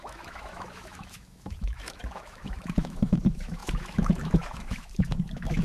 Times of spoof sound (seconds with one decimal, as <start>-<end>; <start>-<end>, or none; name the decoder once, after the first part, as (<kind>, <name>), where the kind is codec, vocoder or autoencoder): 0.0-5.6 (autoencoder, DAC-VAE)